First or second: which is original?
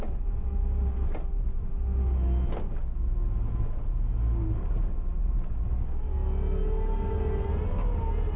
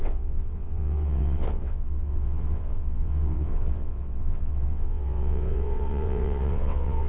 first